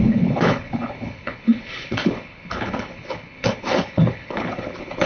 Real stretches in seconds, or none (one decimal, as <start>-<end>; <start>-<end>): none